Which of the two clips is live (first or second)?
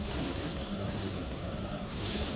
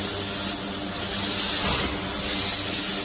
second